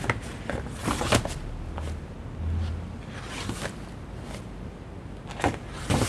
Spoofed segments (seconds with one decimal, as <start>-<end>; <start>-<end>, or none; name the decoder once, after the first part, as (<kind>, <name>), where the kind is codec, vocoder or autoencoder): none